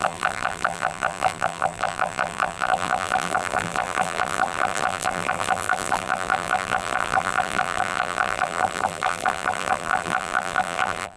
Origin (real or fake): fake